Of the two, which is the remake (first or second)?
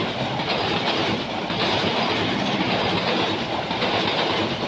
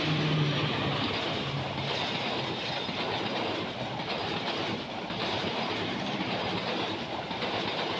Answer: second